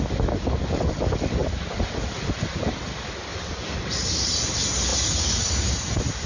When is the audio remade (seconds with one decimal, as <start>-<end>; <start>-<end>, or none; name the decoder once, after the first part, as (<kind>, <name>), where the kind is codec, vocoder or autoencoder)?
1.4-2.6 (vocoder, BigVGAN v2); 3.3-3.9